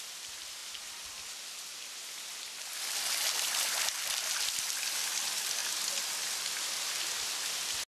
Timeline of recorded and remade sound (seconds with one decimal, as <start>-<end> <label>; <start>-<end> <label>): 0.0-0.6 remade; 0.6-3.3 recorded; 3.3-5.6 remade; 5.6-7.9 recorded